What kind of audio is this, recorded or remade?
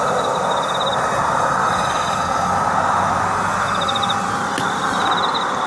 recorded